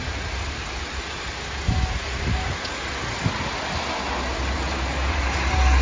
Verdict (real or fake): real